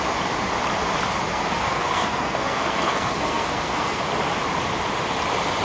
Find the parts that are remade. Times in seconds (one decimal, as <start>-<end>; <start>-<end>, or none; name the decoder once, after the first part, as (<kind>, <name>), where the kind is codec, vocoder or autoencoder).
1.3-4.0 (codec, SNAC)